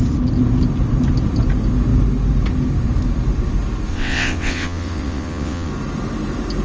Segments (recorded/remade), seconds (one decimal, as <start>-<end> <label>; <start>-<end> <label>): 0.0-3.9 recorded; 3.9-5.7 remade; 5.7-6.6 recorded